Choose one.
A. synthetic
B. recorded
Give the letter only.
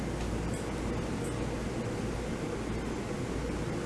B